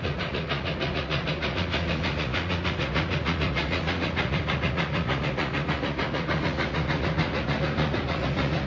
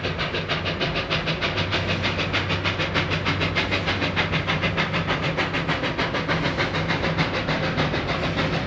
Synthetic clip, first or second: first